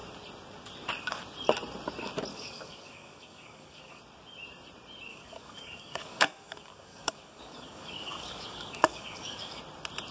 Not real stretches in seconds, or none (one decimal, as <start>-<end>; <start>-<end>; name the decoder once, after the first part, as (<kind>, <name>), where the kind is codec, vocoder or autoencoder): 2.3-4.0 (codec, DAC); 5.1-9.6